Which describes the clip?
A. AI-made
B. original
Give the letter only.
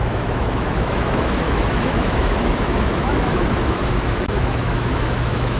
A